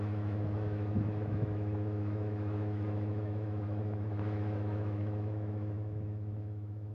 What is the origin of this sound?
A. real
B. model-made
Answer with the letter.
B